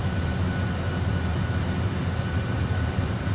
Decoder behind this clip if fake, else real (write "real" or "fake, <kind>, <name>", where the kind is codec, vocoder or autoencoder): real